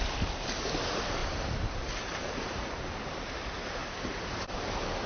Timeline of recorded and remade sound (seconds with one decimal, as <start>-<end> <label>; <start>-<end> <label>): 0.0-1.2 recorded; 1.2-2.9 remade; 2.9-3.8 recorded; 3.8-5.1 remade

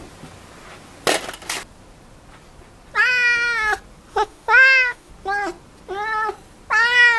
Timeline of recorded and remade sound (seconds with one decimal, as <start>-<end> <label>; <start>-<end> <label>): 0.0-4.1 recorded; 4.1-5.1 remade; 5.1-7.2 recorded

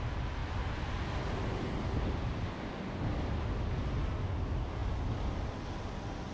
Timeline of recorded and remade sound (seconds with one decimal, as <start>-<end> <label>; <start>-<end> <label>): 0.0-6.3 recorded

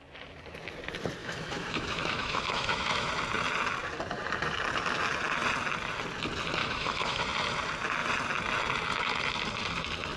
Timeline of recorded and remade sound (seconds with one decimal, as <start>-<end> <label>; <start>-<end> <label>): 0.0-1.2 recorded; 1.2-3.1 remade; 3.1-6.6 recorded; 6.6-7.2 remade; 7.2-10.2 recorded

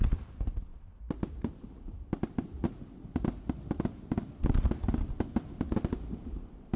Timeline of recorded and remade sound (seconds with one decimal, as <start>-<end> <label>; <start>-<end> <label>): 0.0-0.7 recorded; 0.7-2.2 remade; 2.2-6.8 recorded

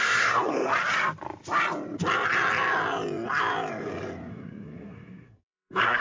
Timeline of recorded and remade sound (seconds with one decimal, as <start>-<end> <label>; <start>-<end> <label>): 0.0-0.7 remade; 0.7-4.3 recorded; 4.3-6.0 remade

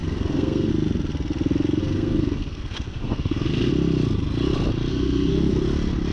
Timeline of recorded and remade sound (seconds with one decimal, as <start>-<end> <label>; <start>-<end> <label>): 0.0-0.7 remade; 0.7-1.8 recorded; 1.8-3.7 remade; 3.7-4.9 recorded; 4.9-5.5 remade; 5.5-6.1 recorded

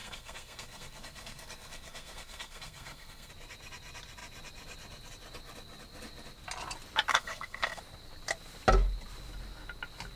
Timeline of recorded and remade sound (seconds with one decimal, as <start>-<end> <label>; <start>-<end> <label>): 0.0-3.3 remade; 3.3-7.1 recorded; 7.1-7.8 remade; 7.8-10.2 recorded